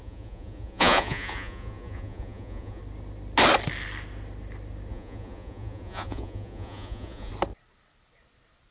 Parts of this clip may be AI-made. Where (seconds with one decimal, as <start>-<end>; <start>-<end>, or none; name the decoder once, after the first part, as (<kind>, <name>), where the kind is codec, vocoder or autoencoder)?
0.0-2.8 (vocoder, Vocos); 4.9-7.3